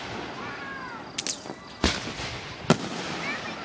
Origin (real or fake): real